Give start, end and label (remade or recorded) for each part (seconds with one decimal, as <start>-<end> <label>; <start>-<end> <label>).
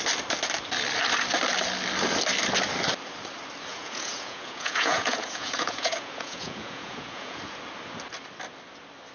0.0-3.7 recorded; 3.7-7.4 remade; 7.4-9.1 recorded